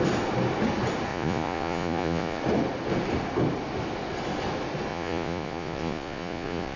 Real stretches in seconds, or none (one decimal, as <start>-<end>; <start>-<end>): 0.0-1.1; 2.4-4.9